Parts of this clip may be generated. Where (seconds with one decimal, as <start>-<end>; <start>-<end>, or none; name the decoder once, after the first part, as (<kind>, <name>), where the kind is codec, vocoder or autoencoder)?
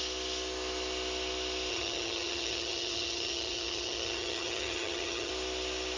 1.7-5.3 (vocoder, HiFi-GAN)